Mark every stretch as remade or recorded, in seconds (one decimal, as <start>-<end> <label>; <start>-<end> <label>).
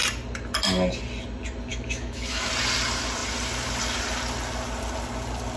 0.0-1.7 recorded; 1.7-2.5 remade; 2.5-5.6 recorded